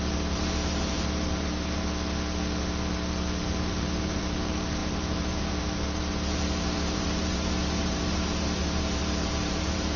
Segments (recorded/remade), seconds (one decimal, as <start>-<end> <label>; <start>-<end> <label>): 0.0-1.8 remade; 1.8-3.4 recorded; 3.4-10.0 remade